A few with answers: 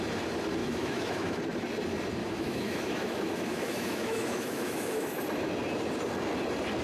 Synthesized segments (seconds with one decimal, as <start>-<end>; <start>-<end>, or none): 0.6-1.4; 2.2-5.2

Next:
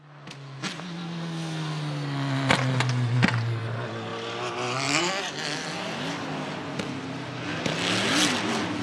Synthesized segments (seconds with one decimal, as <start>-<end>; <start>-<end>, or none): none

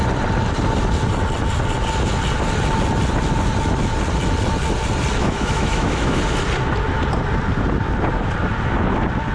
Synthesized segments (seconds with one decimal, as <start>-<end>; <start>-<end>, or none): 5.2-6.2

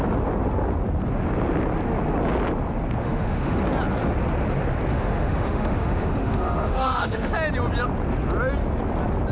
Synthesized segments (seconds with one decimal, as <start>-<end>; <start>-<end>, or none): 3.0-3.6; 4.9-7.3

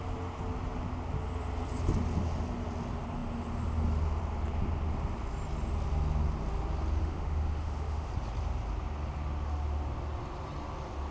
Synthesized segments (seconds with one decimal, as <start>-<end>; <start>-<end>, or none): 7.0-8.1

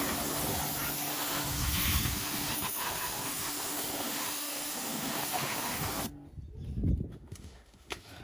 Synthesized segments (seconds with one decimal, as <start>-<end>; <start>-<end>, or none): 1.1-6.0; 7.1-8.2

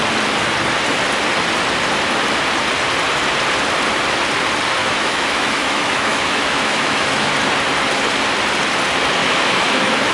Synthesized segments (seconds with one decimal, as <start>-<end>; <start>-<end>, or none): 4.8-7.3; 9.2-10.1